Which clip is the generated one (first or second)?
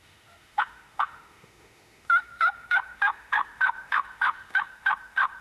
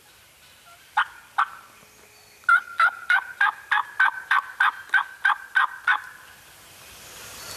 first